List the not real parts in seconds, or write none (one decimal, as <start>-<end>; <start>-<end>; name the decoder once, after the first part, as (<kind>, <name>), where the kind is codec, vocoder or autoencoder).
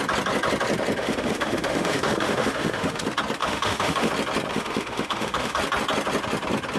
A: 1.0-3.0 (autoencoder, DAC-VAE); 3.4-4.1; 4.5-5.6